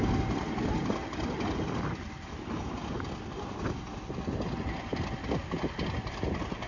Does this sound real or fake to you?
real